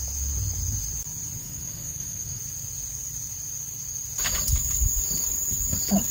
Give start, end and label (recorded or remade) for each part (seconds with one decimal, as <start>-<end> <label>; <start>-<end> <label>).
0.0-1.4 recorded; 1.4-2.4 remade; 2.4-6.1 recorded